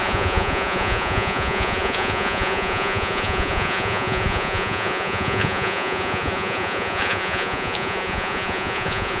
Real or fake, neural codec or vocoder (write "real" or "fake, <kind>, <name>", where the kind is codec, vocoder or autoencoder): fake, vocoder, Vocos